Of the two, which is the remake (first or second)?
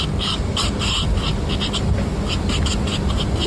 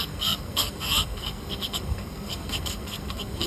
second